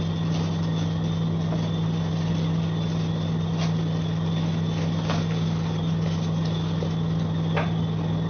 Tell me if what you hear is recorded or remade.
recorded